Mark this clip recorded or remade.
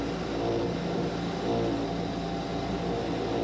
recorded